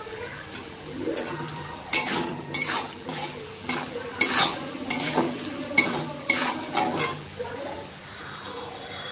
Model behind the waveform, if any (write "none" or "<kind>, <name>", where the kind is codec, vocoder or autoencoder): vocoder, BigVGAN v2